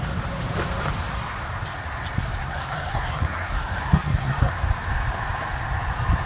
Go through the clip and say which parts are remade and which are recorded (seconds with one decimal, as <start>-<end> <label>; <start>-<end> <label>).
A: 0.0-2.4 recorded; 2.4-4.5 remade; 4.5-6.3 recorded